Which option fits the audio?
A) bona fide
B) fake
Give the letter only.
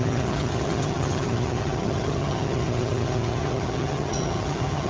B